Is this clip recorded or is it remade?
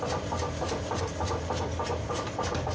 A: recorded